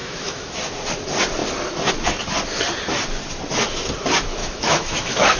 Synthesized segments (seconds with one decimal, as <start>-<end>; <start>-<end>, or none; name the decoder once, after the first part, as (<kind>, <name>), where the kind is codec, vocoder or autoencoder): 0.0-0.6 (autoencoder, DAC-VAE); 4.4-5.4